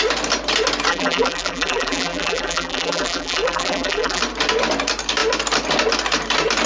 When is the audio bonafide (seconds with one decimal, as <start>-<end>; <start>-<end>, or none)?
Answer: 0.0-0.9; 4.2-6.7